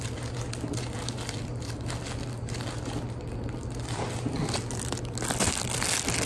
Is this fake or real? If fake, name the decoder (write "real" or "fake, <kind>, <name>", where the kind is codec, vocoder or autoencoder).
real